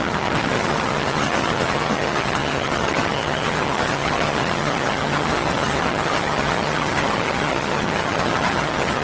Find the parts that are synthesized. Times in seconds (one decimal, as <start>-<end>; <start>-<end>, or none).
0.0-9.0